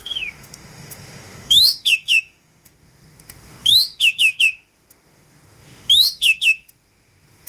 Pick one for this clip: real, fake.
fake